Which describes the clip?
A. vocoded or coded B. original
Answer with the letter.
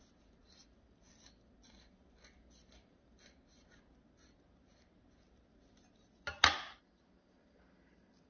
B